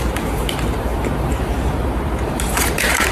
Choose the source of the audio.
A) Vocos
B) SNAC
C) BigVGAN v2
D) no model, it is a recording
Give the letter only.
C